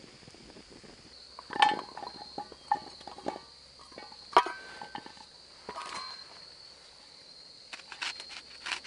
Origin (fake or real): real